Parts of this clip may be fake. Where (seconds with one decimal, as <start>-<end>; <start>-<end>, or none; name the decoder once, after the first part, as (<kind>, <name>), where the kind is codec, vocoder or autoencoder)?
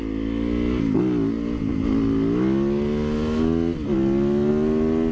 none